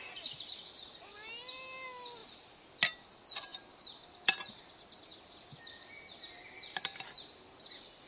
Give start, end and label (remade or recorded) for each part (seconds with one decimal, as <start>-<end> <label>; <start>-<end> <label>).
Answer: 0.0-8.1 recorded